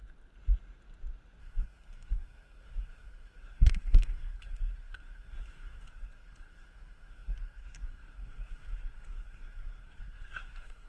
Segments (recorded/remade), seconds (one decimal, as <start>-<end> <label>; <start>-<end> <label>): 0.0-1.4 recorded; 1.4-10.9 remade